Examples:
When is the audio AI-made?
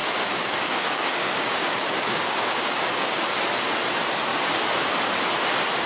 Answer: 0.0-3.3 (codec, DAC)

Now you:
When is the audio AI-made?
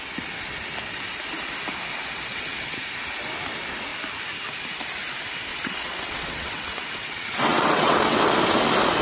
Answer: 2.3-2.8 (vocoder, WaveNeXt); 5.5-8.2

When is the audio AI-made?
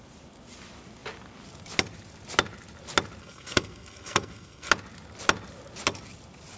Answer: 3.2-4.7 (codec, SNAC)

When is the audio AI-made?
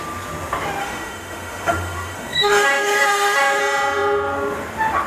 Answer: 0.8-3.6 (autoencoder, DAC-VAE)